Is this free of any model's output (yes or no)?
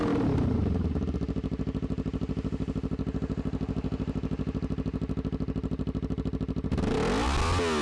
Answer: yes